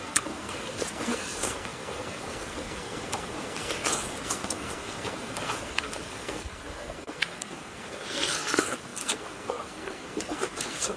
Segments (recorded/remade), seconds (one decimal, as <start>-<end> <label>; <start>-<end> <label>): 0.0-11.0 remade

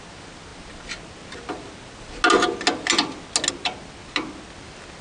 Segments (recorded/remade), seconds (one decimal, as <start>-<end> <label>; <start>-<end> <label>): 0.0-5.0 recorded

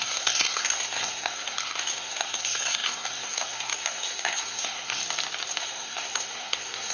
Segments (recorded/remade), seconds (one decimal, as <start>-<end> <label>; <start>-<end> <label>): 0.0-5.0 remade; 5.0-5.6 recorded; 5.6-6.9 remade